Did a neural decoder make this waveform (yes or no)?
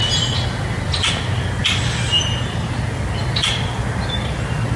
no